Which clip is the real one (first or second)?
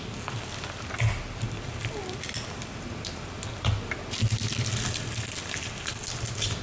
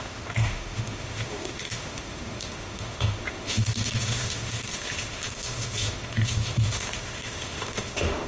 first